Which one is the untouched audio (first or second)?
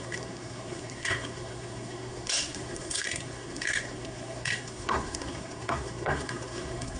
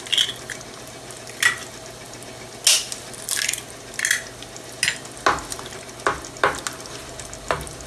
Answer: second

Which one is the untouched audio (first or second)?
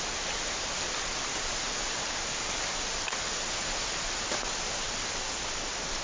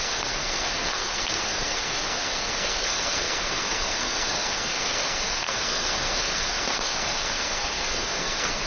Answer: first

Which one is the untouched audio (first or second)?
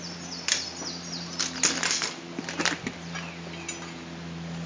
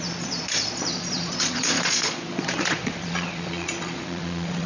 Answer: first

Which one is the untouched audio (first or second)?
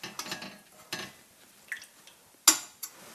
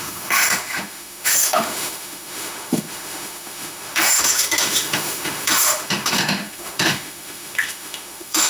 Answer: first